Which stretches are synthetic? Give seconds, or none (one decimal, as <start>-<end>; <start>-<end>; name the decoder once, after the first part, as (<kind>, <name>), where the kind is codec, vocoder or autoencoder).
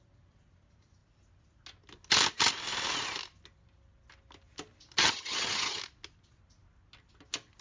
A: 5.0-5.8 (vocoder, HiFi-GAN)